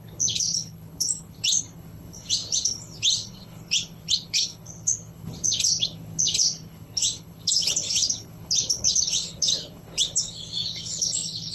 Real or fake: fake